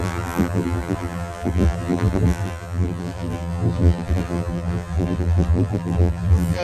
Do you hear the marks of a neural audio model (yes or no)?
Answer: yes